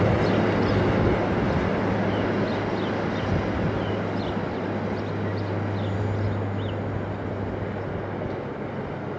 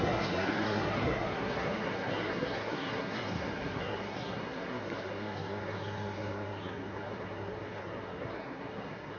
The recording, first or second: first